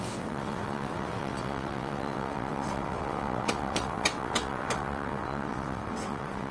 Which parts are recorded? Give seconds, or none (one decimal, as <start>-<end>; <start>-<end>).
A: none